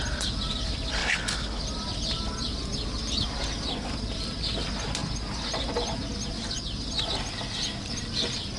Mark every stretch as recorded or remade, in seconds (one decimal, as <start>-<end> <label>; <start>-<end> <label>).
0.0-1.0 recorded; 1.0-1.6 remade; 1.6-8.6 recorded